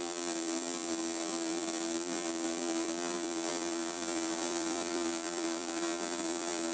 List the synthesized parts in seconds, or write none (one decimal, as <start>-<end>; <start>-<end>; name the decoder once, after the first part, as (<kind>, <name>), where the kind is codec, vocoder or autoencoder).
0.0-6.7 (vocoder, BigVGAN v2)